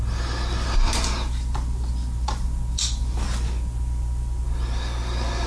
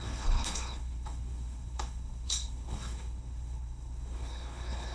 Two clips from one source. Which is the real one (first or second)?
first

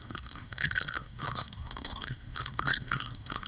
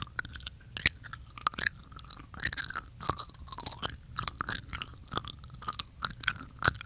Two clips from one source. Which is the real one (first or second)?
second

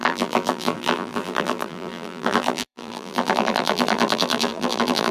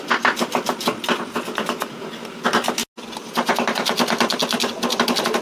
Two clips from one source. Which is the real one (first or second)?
second